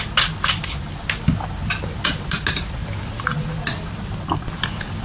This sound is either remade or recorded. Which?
recorded